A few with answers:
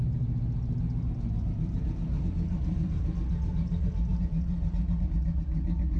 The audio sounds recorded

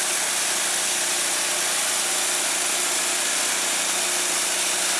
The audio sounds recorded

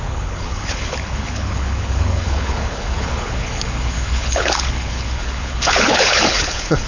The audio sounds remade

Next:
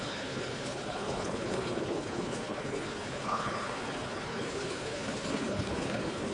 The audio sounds remade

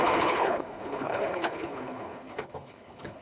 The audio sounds remade